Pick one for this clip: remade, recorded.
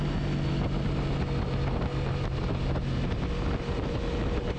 recorded